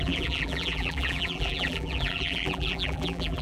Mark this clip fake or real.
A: fake